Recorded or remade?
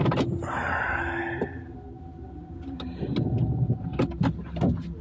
recorded